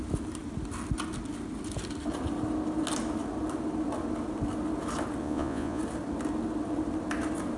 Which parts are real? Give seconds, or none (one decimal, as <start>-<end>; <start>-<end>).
0.0-5.2; 5.8-7.6